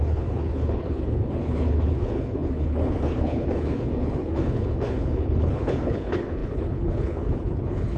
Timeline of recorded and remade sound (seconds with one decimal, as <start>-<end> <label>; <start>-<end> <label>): 0.0-8.0 remade

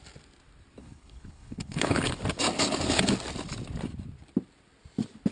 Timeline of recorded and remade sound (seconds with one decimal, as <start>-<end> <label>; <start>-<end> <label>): 0.0-0.8 recorded; 0.8-2.1 remade; 2.1-5.3 recorded